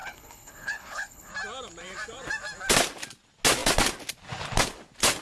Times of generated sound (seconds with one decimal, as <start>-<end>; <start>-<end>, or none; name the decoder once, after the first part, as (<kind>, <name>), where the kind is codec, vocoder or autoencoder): 0.0-1.3 (codec, HILCodec)